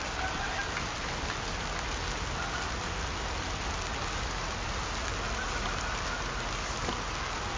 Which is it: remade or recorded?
recorded